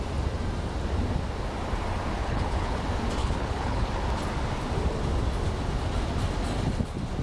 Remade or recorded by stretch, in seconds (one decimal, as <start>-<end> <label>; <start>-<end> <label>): 0.0-2.2 recorded; 2.2-2.8 remade; 2.8-3.2 recorded; 3.2-3.9 remade; 3.9-7.2 recorded